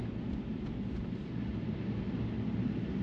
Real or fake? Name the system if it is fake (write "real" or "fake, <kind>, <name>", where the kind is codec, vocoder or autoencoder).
real